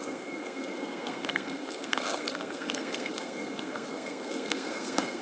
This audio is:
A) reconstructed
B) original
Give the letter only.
A